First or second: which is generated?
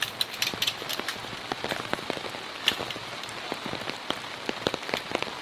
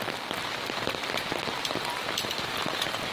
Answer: first